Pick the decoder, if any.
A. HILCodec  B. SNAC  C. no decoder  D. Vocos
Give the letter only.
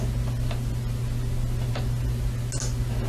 C